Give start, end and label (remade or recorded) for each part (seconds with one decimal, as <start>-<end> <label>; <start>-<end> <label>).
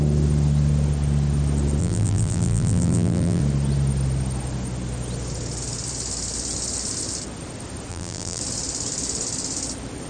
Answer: 0.0-1.8 recorded; 1.8-3.4 remade; 3.4-7.9 recorded; 7.9-8.4 remade; 8.4-10.1 recorded